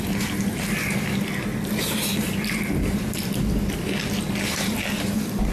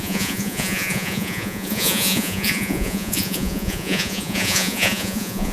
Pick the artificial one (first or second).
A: second